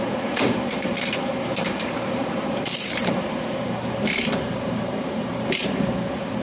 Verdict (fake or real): fake